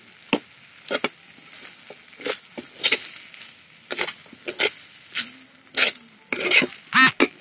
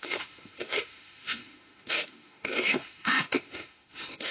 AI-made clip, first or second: second